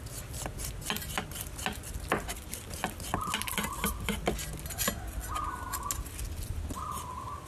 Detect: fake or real real